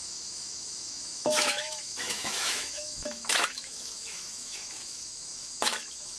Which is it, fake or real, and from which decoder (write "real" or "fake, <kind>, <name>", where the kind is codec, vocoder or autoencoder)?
fake, autoencoder, DAC-VAE